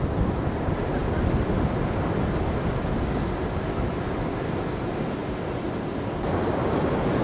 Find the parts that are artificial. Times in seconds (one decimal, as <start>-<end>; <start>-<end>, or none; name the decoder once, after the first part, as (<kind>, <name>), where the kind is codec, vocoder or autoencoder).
none

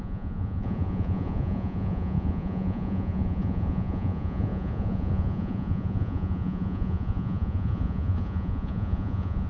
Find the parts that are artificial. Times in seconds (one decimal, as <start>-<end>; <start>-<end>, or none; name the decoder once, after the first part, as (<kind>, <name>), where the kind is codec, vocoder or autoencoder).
0.0-9.5 (vocoder, Vocos)

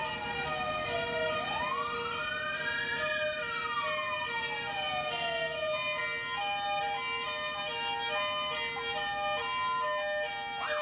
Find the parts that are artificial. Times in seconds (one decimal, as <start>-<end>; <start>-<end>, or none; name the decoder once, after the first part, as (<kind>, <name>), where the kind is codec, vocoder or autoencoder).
none

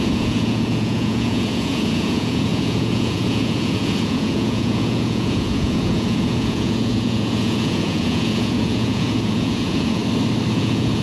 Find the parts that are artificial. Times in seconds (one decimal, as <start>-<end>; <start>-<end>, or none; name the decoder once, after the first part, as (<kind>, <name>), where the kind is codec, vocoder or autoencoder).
0.0-10.0 (vocoder, Vocos); 10.5-11.0

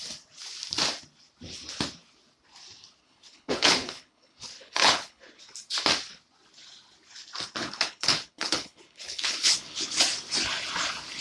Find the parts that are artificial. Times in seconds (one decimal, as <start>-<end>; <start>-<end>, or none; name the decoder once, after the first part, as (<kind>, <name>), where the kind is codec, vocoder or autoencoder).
3.0-5.4 (codec, HILCodec); 7.6-10.0

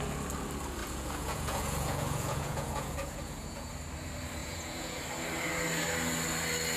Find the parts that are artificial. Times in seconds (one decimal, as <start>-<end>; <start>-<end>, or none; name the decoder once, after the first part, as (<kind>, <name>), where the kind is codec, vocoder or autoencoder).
0.8-3.7 (vocoder, Vocos); 4.4-5.0